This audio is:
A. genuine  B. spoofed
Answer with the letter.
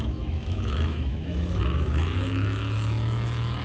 B